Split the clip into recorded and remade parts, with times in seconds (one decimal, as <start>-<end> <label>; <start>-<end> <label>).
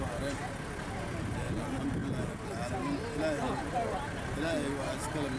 0.0-5.4 recorded